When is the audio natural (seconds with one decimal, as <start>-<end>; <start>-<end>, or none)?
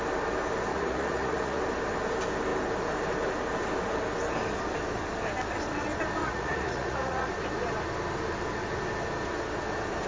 0.0-0.7; 1.6-6.2; 7.3-10.1